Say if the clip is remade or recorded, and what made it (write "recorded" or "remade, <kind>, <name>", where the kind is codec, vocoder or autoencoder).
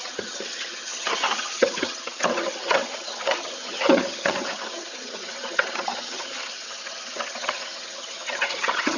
remade, vocoder, HiFi-GAN